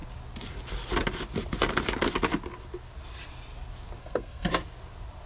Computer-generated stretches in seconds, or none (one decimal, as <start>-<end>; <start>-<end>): 4.0-4.5